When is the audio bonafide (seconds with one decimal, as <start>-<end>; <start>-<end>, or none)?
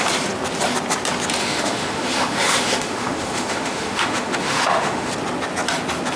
0.0-1.4; 5.1-6.2